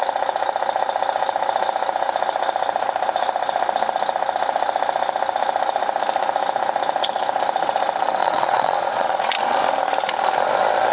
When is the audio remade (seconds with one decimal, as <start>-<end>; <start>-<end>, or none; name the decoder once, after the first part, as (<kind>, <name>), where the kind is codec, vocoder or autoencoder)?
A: 8.2-9.6 (vocoder, Vocos)